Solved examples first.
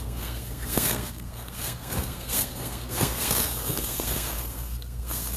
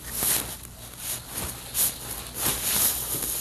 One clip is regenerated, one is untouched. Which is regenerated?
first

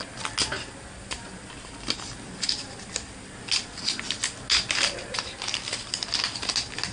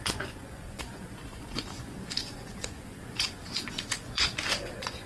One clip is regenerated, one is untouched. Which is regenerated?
second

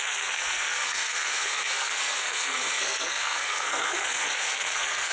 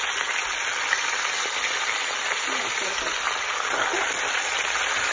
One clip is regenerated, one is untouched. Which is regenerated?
first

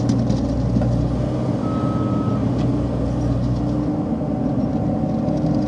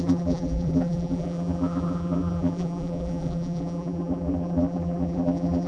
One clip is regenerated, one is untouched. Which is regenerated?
second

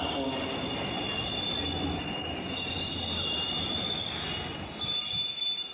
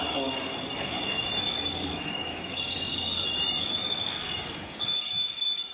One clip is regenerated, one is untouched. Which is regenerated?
second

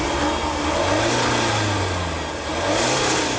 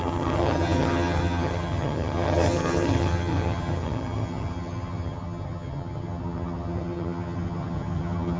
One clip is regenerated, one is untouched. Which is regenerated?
second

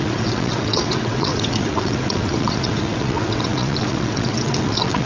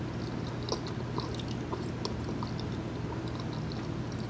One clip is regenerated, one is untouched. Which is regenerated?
first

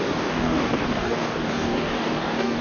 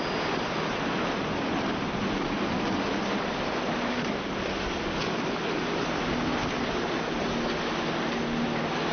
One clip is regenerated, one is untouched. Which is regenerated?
first